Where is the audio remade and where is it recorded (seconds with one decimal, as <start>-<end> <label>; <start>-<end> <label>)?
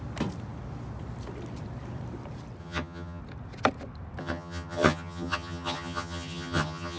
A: 0.0-2.6 recorded; 2.6-3.2 remade; 3.2-4.2 recorded; 4.2-7.0 remade